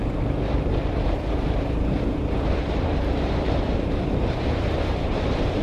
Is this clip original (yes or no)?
no